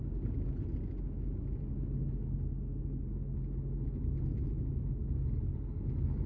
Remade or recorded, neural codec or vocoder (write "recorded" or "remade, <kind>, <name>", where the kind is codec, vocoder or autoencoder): recorded